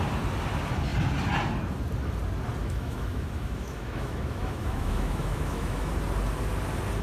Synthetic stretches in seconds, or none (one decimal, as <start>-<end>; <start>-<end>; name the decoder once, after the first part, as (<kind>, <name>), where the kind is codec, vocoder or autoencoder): 2.6-5.9 (autoencoder, DAC-VAE)